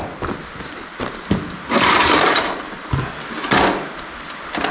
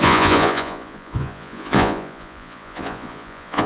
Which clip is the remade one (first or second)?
second